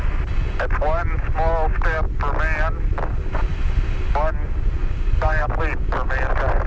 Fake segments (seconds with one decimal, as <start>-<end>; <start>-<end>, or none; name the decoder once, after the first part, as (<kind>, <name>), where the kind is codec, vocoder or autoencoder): 3.5-4.1 (vocoder, BigVGAN v2); 4.8-5.6